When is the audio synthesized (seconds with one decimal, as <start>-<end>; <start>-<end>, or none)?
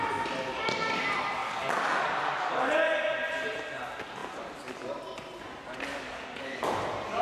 1.4-2.7; 5.9-6.6